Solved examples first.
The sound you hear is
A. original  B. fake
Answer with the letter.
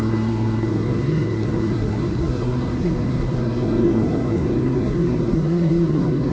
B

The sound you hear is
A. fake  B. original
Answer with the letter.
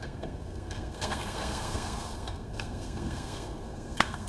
A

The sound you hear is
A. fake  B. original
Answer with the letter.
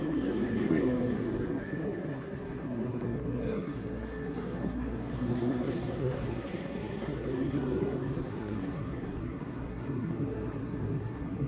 A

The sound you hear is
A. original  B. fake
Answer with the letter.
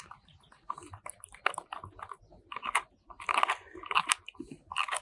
A